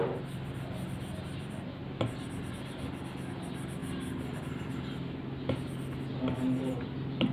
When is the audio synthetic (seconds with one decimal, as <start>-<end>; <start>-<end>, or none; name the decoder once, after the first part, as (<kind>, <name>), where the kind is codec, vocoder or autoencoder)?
none